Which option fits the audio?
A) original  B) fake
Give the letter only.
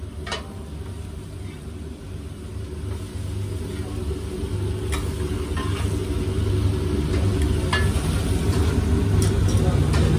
A